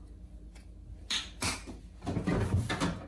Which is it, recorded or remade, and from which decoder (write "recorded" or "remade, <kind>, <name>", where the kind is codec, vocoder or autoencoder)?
recorded